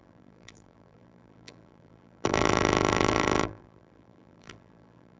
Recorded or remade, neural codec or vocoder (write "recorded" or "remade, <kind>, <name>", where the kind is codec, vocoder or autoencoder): remade, vocoder, BigVGAN v2